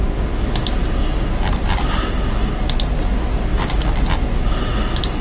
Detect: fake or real real